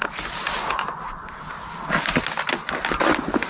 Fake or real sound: real